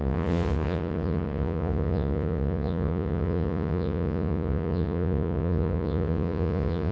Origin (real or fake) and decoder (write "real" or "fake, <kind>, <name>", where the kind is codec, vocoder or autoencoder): fake, vocoder, Vocos